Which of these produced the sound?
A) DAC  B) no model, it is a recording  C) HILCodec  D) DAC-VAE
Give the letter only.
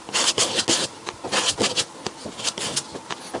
B